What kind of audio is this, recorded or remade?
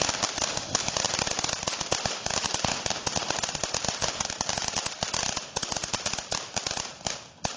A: recorded